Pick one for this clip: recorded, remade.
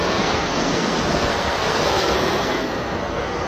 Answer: remade